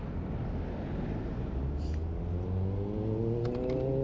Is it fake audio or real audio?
real